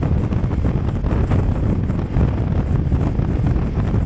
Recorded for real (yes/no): yes